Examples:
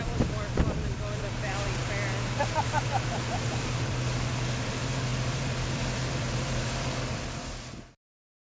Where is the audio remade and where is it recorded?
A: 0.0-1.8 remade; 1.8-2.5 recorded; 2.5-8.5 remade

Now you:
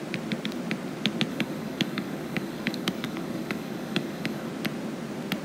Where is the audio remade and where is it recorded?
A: 0.0-1.3 recorded; 1.3-4.5 remade; 4.5-5.4 recorded

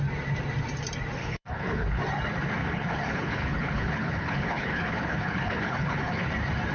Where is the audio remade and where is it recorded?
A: 0.0-1.2 recorded; 1.2-2.0 remade; 2.0-2.6 recorded; 2.6-6.3 remade; 6.3-6.7 recorded

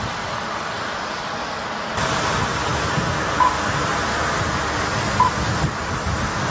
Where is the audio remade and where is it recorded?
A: 0.0-6.5 recorded

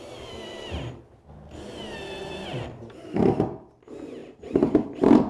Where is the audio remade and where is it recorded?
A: 0.0-2.5 recorded; 2.5-3.2 remade; 3.2-4.2 recorded; 4.2-5.3 remade

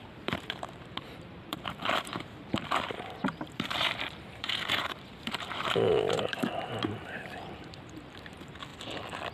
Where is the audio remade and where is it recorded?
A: 0.0-8.7 remade; 8.7-9.3 recorded